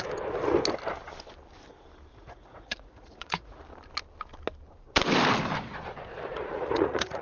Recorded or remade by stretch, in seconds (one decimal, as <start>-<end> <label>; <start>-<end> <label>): 0.0-2.1 recorded; 2.1-3.6 remade; 3.6-6.3 recorded; 6.3-7.2 remade